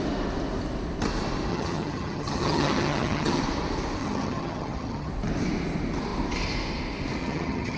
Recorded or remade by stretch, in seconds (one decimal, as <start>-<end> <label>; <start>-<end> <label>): 0.0-1.5 recorded; 1.5-3.4 remade; 3.4-4.0 recorded; 4.0-5.1 remade; 5.1-7.2 recorded; 7.2-7.8 remade